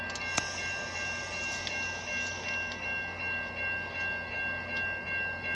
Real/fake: real